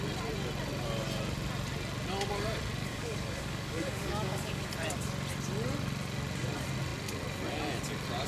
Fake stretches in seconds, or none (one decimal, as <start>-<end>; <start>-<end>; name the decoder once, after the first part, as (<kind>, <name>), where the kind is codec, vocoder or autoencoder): 2.8-4.7 (codec, DAC)